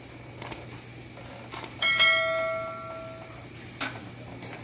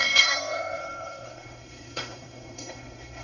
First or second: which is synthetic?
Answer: second